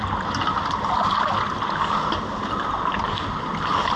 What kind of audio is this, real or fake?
real